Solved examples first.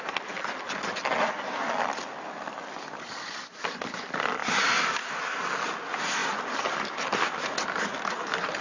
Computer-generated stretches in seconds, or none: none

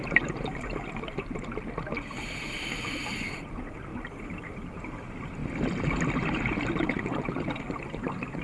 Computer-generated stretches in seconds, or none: none

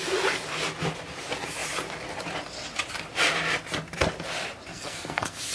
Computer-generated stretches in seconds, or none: 4.7-5.5

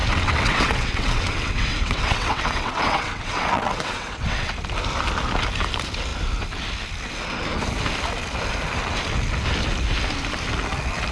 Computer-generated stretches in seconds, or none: 0.0-4.5

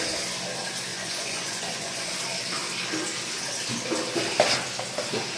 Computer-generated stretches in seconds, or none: 0.9-2.1

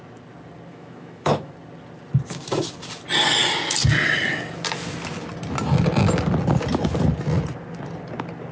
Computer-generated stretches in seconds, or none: 0.7-1.5

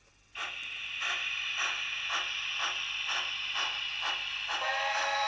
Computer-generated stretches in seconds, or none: none

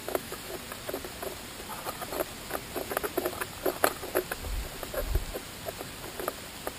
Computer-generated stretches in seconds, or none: 0.0-0.5